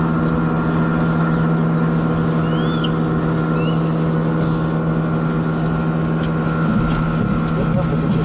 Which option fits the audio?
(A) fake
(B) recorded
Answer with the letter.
B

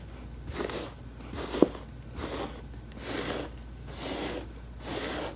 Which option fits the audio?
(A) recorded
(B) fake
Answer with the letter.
A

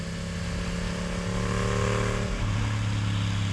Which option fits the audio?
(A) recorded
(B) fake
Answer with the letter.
A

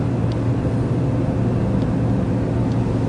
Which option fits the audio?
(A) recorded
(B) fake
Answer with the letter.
A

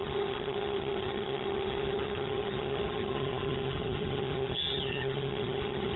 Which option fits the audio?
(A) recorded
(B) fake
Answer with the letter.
B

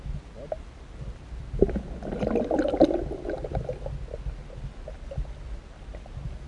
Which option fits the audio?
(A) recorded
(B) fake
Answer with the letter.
A